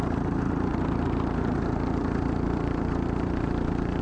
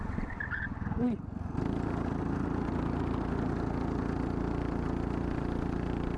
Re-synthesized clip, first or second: first